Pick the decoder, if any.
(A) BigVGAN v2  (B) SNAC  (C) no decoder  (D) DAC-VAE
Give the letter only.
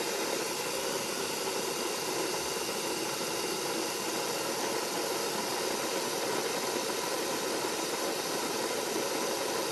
C